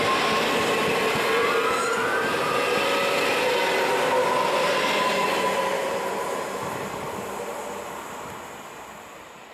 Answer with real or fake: real